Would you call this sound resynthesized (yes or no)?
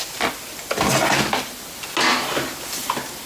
no